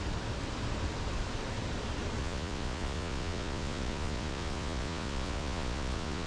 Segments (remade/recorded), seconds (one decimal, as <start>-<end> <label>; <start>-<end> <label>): 0.0-2.2 recorded; 2.2-6.3 remade

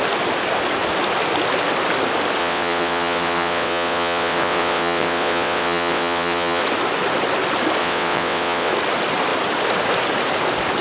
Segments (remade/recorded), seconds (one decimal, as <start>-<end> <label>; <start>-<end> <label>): 0.0-2.4 recorded; 2.4-6.6 remade; 6.6-7.8 recorded; 7.8-8.7 remade; 8.7-10.8 recorded

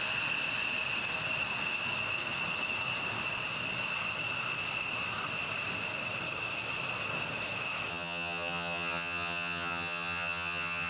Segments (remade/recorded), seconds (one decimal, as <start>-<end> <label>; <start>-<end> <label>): 0.0-7.9 recorded; 7.9-10.9 remade